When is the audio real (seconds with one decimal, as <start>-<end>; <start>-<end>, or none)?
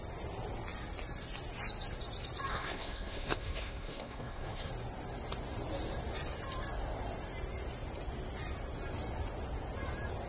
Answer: 0.0-2.5; 4.7-10.3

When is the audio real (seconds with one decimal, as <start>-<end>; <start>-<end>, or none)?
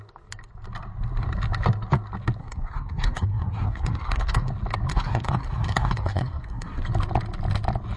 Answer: 0.0-2.4; 4.5-4.9; 6.8-8.0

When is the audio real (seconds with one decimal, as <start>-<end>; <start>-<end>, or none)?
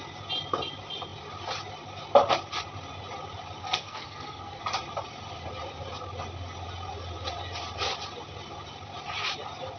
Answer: 0.0-3.6; 4.6-9.8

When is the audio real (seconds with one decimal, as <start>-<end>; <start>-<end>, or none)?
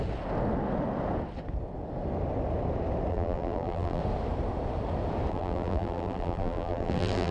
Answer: 0.0-3.1; 4.0-5.3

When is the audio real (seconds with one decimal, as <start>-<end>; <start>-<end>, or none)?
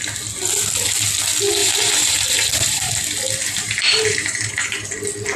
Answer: 0.0-1.6; 2.9-3.4; 4.9-5.4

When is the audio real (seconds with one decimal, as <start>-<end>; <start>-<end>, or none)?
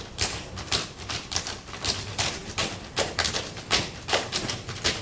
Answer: none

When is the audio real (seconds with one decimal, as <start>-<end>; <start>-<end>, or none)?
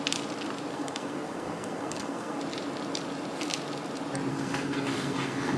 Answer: 0.0-0.7; 2.4-4.3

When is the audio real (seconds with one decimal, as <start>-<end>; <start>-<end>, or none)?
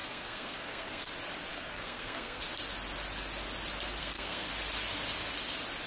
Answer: 1.1-1.5; 2.4-4.0; 4.5-5.9